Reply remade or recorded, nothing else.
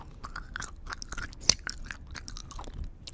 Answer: recorded